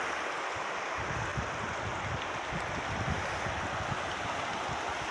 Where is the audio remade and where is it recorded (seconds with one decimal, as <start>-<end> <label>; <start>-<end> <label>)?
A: 0.0-5.1 recorded